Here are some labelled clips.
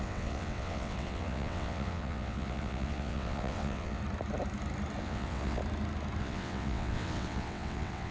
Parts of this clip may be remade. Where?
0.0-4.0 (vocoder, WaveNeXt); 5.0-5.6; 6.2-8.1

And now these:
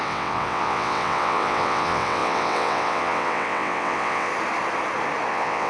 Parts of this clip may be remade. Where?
0.0-4.3 (vocoder, WaveNeXt); 5.3-5.7

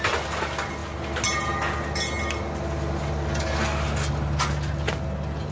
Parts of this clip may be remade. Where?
none

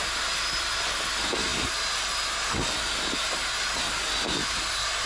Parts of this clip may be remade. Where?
none